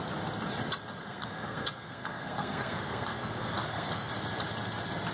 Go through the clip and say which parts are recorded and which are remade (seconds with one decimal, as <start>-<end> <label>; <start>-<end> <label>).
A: 0.0-1.0 recorded; 1.0-4.1 remade; 4.1-5.1 recorded